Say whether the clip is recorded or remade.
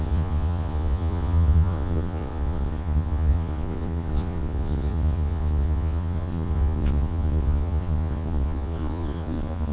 remade